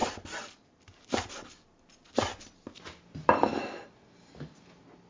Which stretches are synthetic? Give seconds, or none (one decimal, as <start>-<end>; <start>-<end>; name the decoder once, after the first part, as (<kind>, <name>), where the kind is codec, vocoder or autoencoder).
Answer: 0.0-1.3 (vocoder, BigVGAN v2)